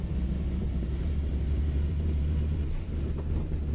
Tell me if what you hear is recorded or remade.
remade